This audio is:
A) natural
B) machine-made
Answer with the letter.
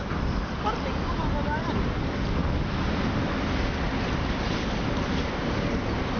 A